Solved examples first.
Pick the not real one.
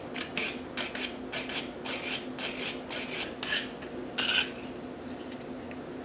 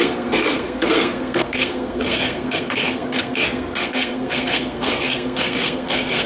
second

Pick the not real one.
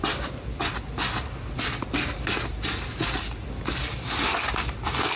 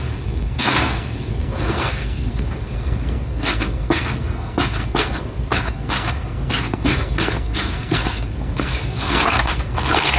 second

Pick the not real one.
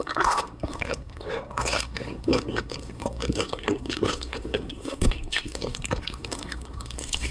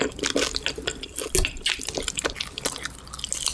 first